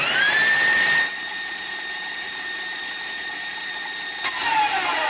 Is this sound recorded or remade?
recorded